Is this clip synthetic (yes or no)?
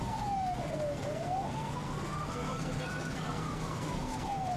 yes